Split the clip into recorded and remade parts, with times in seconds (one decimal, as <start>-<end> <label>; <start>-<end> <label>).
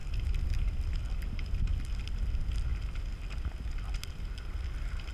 0.0-5.1 recorded